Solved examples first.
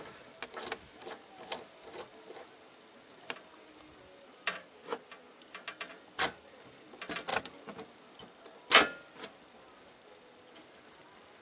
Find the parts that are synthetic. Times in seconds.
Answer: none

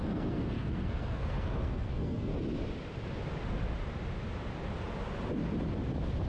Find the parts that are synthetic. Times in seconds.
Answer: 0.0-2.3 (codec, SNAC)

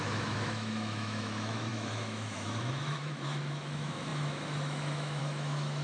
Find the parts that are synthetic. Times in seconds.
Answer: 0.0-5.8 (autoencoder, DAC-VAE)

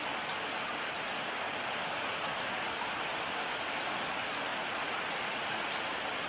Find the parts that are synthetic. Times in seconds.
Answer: 4.5-5.7 (vocoder, Vocos)

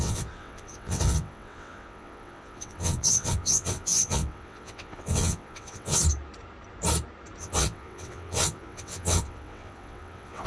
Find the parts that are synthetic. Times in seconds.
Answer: 0.0-6.0 (vocoder, WaveNeXt); 7.4-10.5

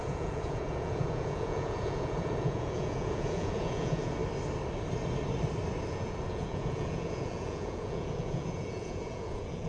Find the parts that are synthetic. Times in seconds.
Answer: 0.0-4.2 (vocoder, Vocos); 5.9-9.7